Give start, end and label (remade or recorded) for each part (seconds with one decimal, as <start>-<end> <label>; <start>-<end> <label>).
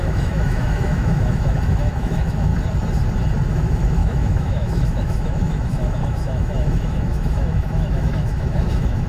0.0-2.5 remade; 2.5-3.5 recorded; 3.5-9.1 remade